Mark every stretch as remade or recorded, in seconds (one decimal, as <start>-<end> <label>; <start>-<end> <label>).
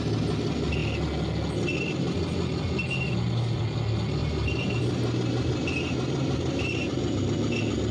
0.0-4.2 recorded; 4.2-7.2 remade; 7.2-7.9 recorded